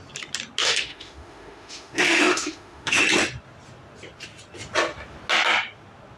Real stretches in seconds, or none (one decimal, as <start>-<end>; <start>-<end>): 0.0-0.6; 3.0-6.2

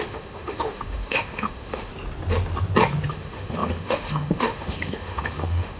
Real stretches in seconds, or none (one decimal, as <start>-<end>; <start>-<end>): 1.9-3.1

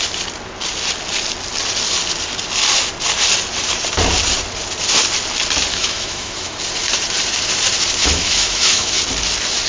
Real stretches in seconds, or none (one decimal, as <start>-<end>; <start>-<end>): 0.0-5.7; 6.6-8.0; 9.0-9.7